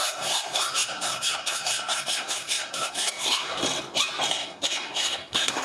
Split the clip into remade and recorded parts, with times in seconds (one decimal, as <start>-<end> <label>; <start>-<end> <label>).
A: 0.0-3.6 remade; 3.6-4.3 recorded; 4.3-5.6 remade

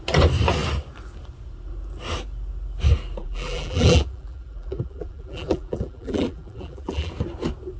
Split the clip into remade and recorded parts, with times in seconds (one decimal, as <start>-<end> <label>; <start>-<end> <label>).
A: 0.0-3.2 recorded; 3.2-7.1 remade; 7.1-7.8 recorded

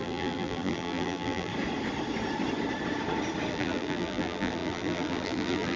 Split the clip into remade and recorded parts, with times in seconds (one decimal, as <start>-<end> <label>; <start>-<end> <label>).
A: 0.0-1.5 remade; 1.5-3.5 recorded; 3.5-5.8 remade

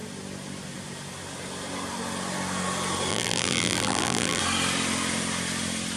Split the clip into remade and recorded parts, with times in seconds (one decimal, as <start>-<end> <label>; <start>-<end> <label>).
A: 0.0-3.1 recorded; 3.1-4.4 remade; 4.4-6.0 recorded

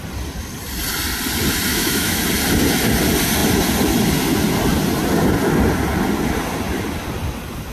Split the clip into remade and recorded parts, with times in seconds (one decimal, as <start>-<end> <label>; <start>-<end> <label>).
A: 0.0-1.7 recorded; 1.7-2.2 remade; 2.2-7.7 recorded

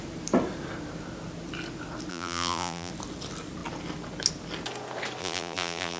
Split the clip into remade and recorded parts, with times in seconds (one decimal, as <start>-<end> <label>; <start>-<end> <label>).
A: 0.0-2.1 recorded; 2.1-2.9 remade; 2.9-5.2 recorded; 5.2-6.0 remade